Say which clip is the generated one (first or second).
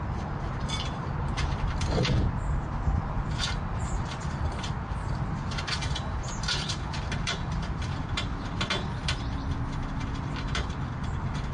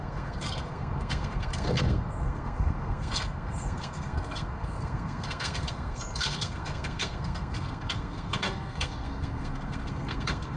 second